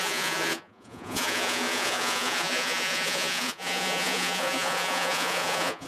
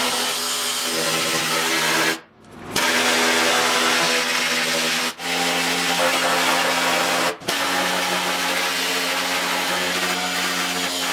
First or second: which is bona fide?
second